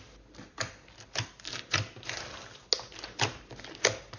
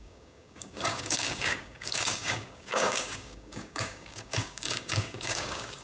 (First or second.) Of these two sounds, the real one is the first